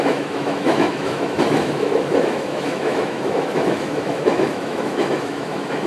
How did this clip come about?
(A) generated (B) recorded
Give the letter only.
A